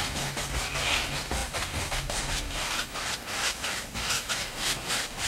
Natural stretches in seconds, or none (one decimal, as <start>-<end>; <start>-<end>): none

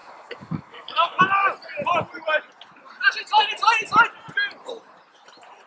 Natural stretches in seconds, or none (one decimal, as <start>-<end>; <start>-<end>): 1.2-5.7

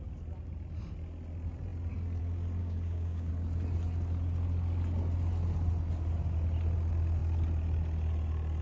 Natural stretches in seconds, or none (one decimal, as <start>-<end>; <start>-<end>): 0.0-2.6; 3.3-8.6

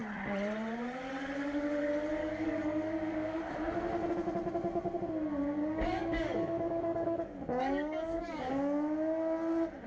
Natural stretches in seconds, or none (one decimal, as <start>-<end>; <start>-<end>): 0.0-2.2; 3.4-5.6; 8.5-9.9

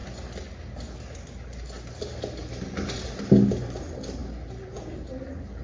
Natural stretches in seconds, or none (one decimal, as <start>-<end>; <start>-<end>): 0.0-5.6